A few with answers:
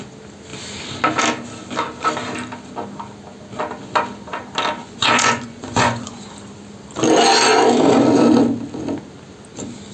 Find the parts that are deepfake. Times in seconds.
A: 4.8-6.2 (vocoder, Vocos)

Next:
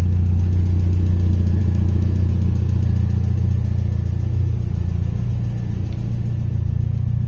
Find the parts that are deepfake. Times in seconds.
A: 1.6-2.3 (autoencoder, DAC-VAE)

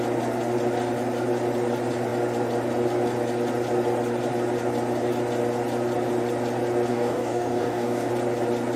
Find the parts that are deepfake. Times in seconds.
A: 6.9-8.1 (codec, DAC)

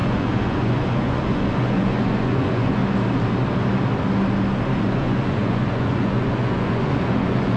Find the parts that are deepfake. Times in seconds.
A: 0.0-2.8 (vocoder, Vocos); 4.8-7.6